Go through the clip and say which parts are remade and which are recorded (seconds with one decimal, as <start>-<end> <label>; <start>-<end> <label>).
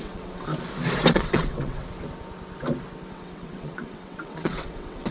0.0-0.5 remade; 0.5-1.1 recorded; 1.1-1.8 remade; 1.8-3.1 recorded; 3.1-5.1 remade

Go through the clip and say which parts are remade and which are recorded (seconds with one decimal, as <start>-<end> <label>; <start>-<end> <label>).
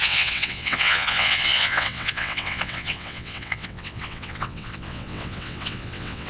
0.0-6.3 remade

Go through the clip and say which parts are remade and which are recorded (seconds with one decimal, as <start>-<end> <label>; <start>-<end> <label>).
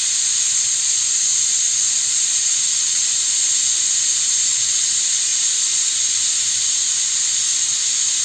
0.0-2.4 recorded; 2.4-3.0 remade; 3.0-8.2 recorded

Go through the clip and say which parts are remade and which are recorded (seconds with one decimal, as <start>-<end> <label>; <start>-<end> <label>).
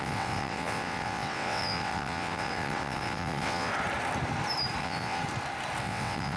0.0-3.7 remade; 3.7-4.8 recorded; 4.8-5.2 remade; 5.2-5.8 recorded; 5.8-6.4 remade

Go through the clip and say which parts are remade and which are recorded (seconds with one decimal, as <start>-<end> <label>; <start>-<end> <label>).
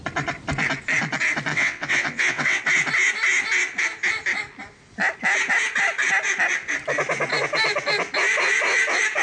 0.0-1.5 recorded; 1.5-2.6 remade; 2.6-9.2 recorded